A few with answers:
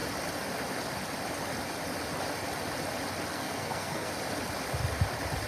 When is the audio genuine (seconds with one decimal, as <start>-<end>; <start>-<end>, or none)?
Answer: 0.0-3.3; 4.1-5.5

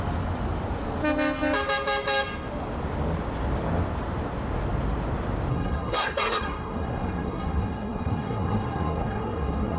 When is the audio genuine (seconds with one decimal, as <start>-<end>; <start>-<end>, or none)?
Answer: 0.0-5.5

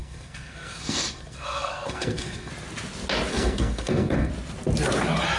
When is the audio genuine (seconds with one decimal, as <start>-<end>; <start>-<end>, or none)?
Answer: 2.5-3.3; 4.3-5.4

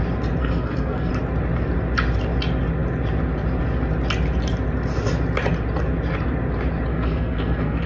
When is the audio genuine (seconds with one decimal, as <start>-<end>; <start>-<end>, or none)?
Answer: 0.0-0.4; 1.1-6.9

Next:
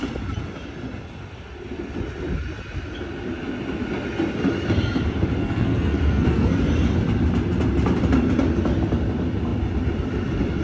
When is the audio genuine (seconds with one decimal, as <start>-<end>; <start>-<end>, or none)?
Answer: 0.0-5.4; 6.6-10.6

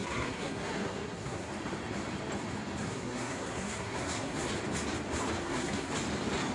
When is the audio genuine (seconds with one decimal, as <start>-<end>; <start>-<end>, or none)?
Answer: 1.5-2.8; 4.5-5.4; 5.9-6.5

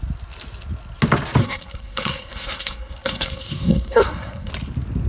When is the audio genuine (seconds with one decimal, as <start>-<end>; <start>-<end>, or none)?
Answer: 0.0-1.4; 4.5-5.1